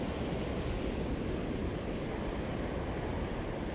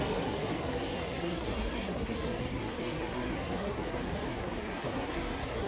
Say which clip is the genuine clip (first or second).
first